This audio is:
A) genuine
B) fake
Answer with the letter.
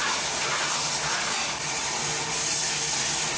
A